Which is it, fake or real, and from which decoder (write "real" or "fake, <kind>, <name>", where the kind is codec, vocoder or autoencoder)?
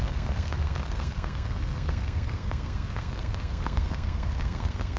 fake, codec, SNAC